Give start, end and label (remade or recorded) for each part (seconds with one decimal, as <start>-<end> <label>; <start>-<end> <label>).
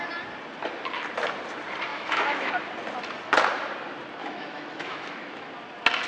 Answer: 0.0-1.9 recorded; 1.9-2.5 remade; 2.5-4.2 recorded; 4.2-5.5 remade; 5.5-6.1 recorded